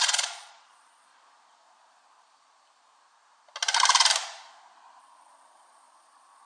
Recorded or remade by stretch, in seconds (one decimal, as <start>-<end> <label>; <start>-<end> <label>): 0.0-1.1 remade; 1.1-5.0 recorded; 5.0-6.5 remade